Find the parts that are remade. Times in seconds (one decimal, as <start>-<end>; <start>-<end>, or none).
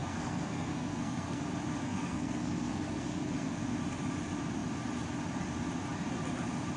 0.0-1.4; 1.8-3.6